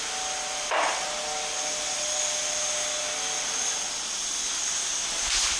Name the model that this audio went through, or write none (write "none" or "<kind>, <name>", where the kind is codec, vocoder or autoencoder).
none